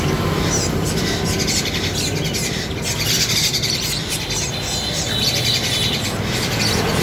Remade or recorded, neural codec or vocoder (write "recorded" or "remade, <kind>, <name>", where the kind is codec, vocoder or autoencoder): recorded